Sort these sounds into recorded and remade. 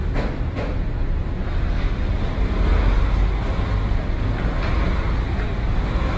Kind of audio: recorded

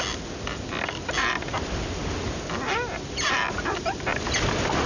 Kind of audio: recorded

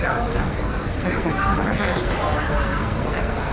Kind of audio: remade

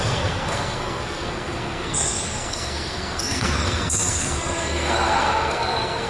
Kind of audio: remade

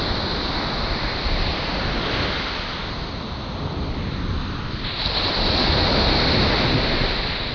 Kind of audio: recorded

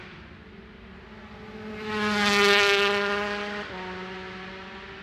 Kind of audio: recorded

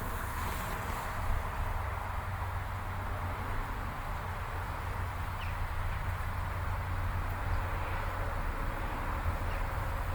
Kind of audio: recorded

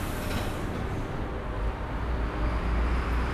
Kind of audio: recorded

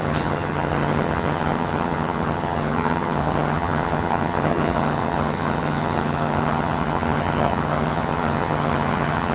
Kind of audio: remade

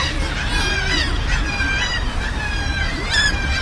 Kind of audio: recorded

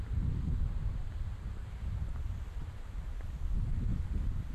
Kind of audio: remade